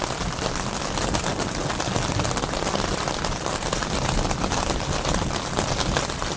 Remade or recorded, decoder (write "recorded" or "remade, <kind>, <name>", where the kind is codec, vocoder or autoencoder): recorded